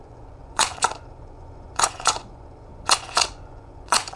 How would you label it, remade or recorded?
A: remade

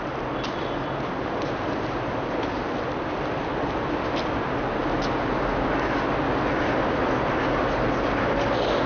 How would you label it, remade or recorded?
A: recorded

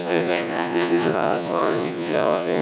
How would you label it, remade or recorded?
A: remade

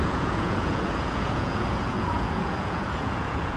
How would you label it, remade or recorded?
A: remade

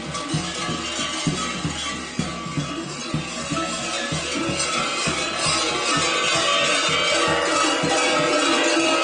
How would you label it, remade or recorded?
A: recorded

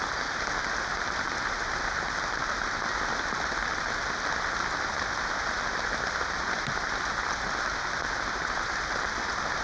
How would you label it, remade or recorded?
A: recorded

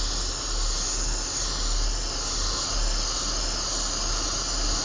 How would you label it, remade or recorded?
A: recorded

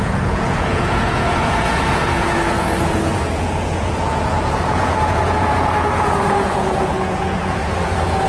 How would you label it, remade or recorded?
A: remade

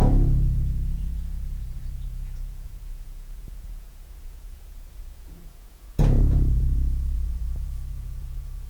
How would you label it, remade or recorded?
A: remade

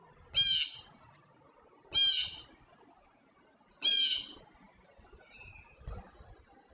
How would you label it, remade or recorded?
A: recorded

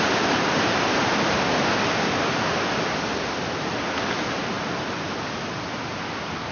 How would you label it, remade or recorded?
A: recorded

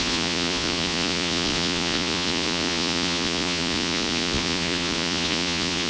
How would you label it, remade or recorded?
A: remade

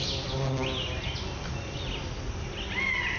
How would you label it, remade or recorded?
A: recorded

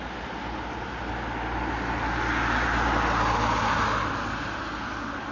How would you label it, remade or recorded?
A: recorded